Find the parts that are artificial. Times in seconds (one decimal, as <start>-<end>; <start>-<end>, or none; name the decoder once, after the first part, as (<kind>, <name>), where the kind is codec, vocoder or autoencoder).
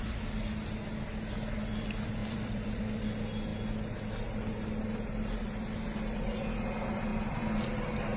2.2-2.8 (vocoder, BigVGAN v2)